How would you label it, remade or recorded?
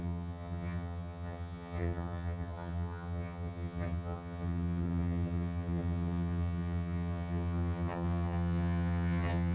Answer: remade